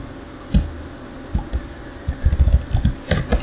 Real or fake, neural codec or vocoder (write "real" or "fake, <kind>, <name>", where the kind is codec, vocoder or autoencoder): real